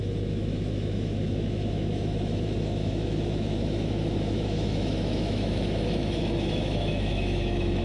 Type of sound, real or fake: fake